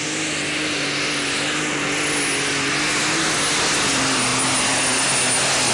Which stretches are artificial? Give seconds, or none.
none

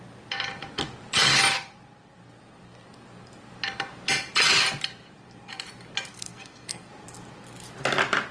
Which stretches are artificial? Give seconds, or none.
6.1-6.9 (codec, SNAC)

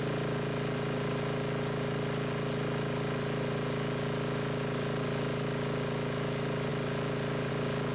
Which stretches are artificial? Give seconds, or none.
none

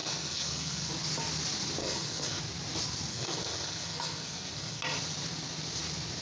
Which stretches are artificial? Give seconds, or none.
0.0-0.9 (codec, SNAC); 1.8-2.4; 3.1-4.8